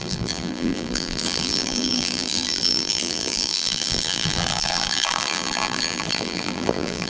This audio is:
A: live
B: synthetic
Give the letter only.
B